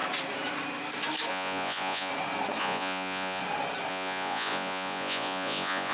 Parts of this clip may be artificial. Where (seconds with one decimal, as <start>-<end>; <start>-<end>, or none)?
1.3-2.1; 2.6-3.4; 3.9-5.9